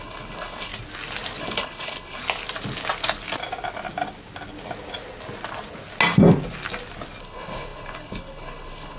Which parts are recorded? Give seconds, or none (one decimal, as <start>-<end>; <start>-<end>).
0.7-1.4; 2.2-7.2